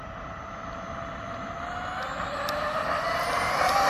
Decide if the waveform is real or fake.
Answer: real